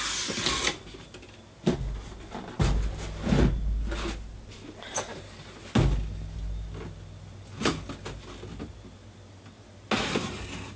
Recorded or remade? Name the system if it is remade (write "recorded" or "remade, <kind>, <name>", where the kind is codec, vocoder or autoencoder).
recorded